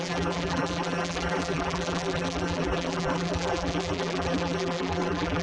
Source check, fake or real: fake